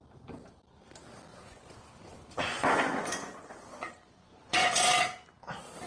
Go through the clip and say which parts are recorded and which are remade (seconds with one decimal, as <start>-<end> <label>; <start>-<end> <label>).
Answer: 0.0-1.3 recorded; 1.3-4.8 remade; 4.8-5.9 recorded